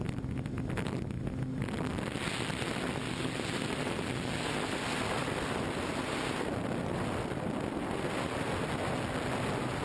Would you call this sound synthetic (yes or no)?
no